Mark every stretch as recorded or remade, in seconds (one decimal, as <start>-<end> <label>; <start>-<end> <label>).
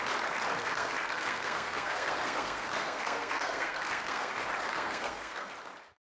0.0-0.6 recorded; 0.6-4.3 remade; 4.3-4.7 recorded; 4.7-5.5 remade; 5.5-6.2 recorded